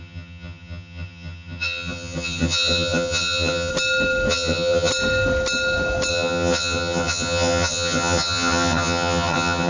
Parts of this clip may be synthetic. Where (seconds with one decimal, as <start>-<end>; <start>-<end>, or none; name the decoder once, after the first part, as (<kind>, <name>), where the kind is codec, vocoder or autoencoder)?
0.0-3.7 (vocoder, HiFi-GAN); 4.3-4.9; 6.1-9.7